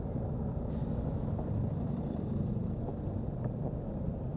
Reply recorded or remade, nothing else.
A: recorded